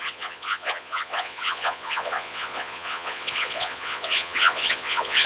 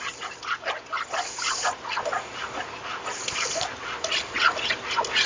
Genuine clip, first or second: second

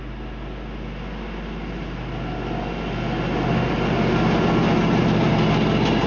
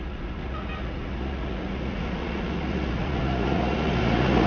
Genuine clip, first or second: first